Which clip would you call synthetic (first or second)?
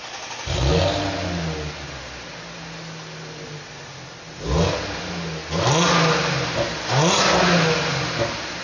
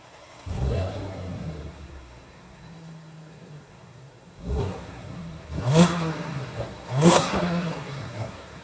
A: second